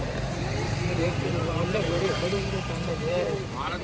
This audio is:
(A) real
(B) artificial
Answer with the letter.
B